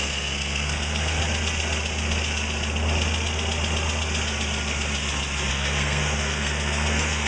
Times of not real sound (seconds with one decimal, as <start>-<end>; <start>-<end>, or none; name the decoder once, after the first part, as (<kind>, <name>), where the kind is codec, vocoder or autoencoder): 0.0-1.2 (codec, SNAC); 5.5-7.3